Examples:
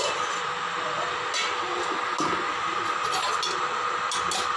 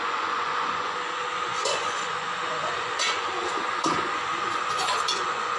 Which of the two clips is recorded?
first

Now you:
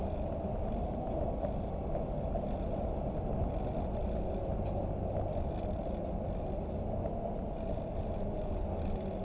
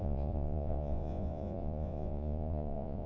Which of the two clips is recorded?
first